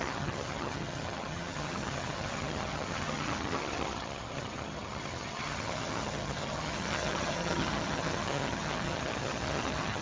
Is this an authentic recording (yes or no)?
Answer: no